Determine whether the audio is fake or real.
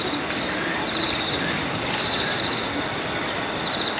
real